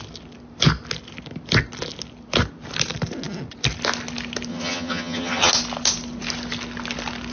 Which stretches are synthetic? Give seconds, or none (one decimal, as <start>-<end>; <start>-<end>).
4.5-5.5